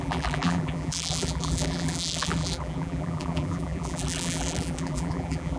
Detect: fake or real fake